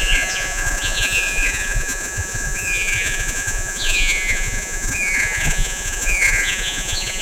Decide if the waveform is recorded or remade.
remade